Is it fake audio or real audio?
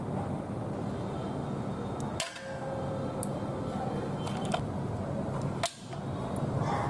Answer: real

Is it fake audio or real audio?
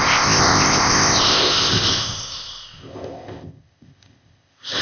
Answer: fake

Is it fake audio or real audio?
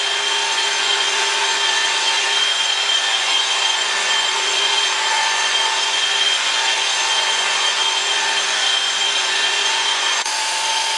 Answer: fake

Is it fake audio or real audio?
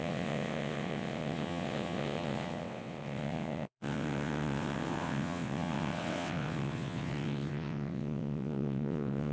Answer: fake